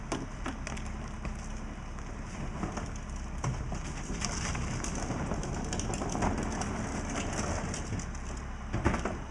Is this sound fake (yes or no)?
no